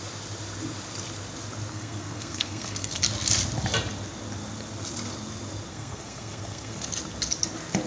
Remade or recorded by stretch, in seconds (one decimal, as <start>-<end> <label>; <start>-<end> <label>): 0.0-1.7 recorded; 1.7-3.0 remade; 3.0-5.7 recorded; 5.7-6.9 remade; 6.9-7.9 recorded